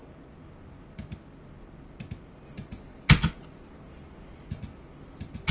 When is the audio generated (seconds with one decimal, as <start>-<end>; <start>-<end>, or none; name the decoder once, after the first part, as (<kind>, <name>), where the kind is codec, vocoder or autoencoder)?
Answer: none